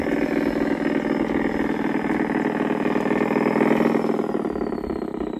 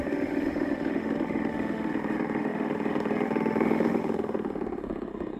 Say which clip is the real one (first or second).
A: first